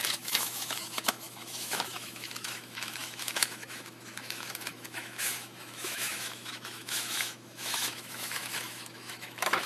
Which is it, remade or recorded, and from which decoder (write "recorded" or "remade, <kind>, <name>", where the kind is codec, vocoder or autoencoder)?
remade, autoencoder, DAC-VAE